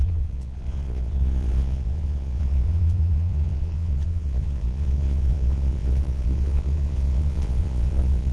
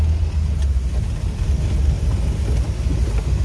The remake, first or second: first